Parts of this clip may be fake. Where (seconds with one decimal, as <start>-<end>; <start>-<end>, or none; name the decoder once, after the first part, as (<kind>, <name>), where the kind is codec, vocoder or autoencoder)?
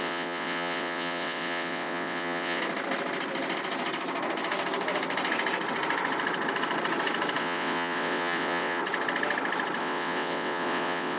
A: 0.0-2.6 (vocoder, WaveNeXt); 7.4-8.8; 9.8-11.2